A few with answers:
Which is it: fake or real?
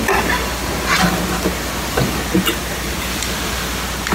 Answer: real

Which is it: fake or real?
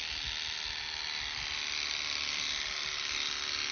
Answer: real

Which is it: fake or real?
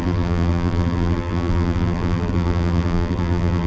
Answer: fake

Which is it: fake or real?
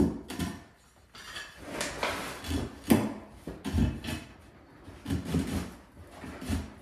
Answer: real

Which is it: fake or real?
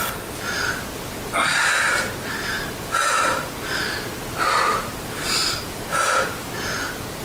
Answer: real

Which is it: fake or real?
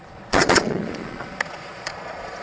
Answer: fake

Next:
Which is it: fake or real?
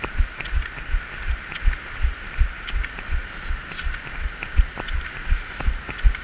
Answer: real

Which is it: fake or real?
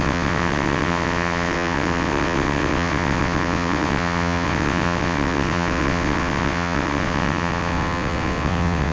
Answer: fake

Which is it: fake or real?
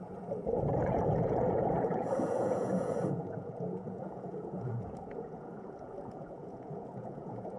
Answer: fake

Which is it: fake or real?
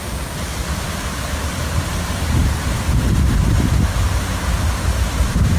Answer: fake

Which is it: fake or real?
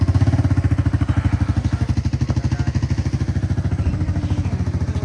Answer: real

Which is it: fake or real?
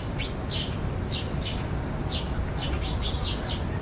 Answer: real